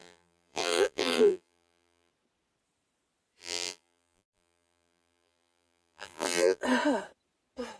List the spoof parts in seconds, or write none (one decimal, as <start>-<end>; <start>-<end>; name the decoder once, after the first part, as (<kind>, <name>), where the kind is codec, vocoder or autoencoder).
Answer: 0.0-2.1 (vocoder, BigVGAN v2); 3.4-6.6